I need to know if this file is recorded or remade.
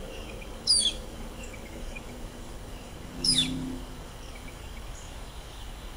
remade